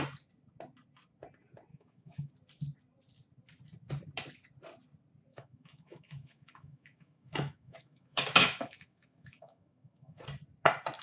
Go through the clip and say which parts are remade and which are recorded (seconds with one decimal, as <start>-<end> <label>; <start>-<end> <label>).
0.0-1.7 recorded; 1.7-2.3 remade; 2.3-5.3 recorded; 5.3-10.2 remade; 10.2-11.0 recorded